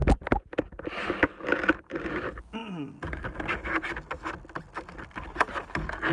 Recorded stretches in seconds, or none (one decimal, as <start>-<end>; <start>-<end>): 0.0-6.1